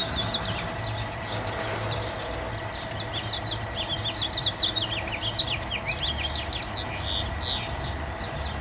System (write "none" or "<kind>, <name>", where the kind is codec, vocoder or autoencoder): none